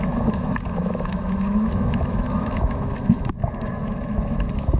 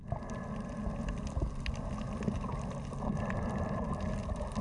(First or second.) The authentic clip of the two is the second